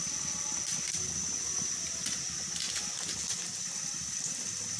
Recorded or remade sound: recorded